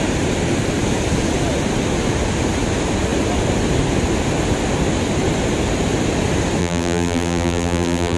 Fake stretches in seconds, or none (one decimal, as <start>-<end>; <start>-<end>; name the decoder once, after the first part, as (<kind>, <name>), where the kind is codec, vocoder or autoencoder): 6.6-8.2 (vocoder, BigVGAN v2)